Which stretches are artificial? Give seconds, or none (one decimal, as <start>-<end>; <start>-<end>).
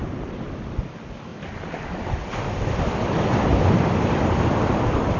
none